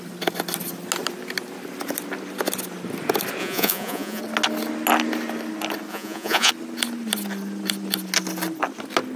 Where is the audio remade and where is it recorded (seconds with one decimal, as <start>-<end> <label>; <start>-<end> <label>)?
0.0-3.4 recorded; 3.4-4.2 remade; 4.2-5.9 recorded; 5.9-6.5 remade; 6.5-9.2 recorded